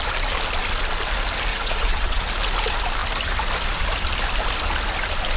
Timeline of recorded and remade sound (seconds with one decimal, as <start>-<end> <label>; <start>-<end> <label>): 0.0-1.5 recorded; 1.5-2.2 remade; 2.2-5.4 recorded